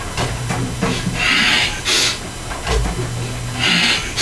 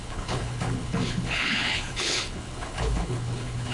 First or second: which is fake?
second